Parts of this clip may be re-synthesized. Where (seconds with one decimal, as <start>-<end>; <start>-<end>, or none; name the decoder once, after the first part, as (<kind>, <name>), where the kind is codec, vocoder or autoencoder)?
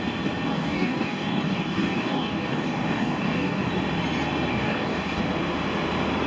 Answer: 0.5-3.7 (codec, DAC); 4.5-5.2